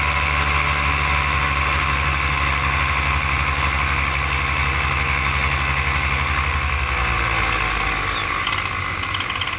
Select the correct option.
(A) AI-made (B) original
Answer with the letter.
B